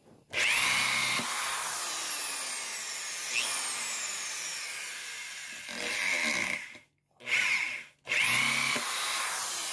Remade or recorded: recorded